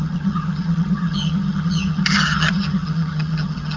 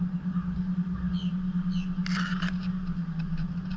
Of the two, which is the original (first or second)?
second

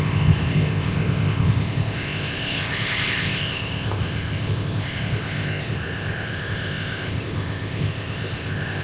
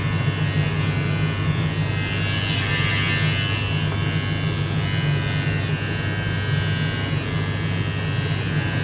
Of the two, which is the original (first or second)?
second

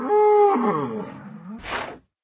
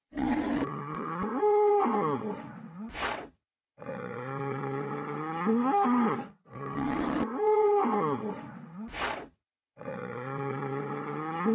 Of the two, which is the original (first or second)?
first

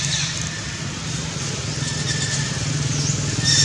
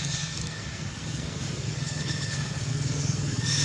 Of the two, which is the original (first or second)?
first